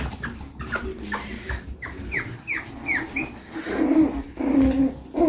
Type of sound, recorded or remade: recorded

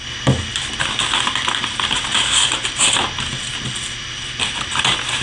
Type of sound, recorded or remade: recorded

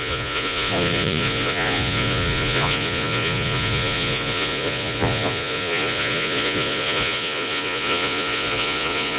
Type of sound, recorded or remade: remade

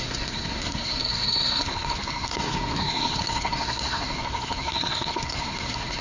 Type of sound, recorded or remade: remade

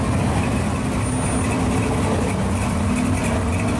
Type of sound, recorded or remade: recorded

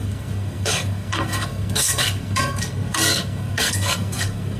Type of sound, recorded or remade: remade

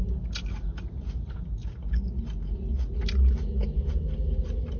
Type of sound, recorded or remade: recorded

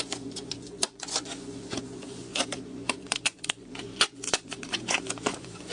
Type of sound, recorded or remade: remade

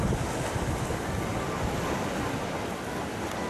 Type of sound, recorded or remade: recorded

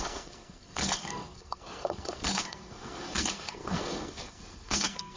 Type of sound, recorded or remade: remade